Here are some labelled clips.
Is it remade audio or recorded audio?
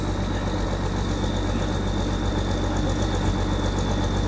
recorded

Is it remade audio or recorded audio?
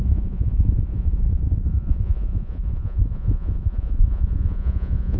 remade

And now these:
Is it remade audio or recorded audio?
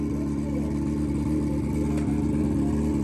recorded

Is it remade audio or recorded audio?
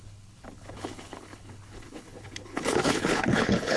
remade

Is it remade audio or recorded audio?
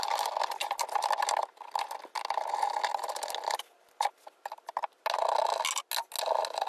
recorded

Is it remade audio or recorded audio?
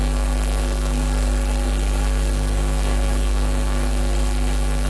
remade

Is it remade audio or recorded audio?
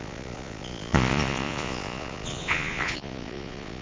remade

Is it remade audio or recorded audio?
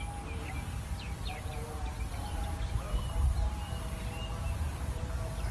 recorded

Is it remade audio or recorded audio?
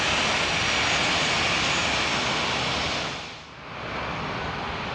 recorded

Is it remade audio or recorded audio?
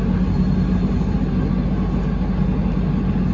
recorded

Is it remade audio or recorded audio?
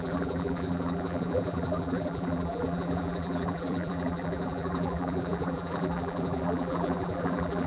remade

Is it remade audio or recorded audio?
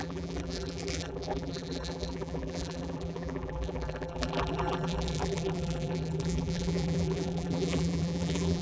remade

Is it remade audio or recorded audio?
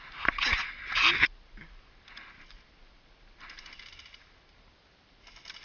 recorded